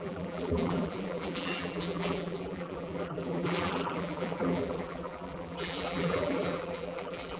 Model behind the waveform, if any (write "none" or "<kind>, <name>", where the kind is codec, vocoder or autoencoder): vocoder, BigVGAN v2